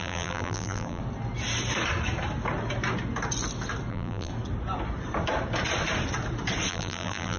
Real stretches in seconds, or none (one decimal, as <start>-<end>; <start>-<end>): 1.0-3.9; 4.3-6.7